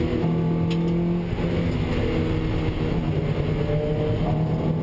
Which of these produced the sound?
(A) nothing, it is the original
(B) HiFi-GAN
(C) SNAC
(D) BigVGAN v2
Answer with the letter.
A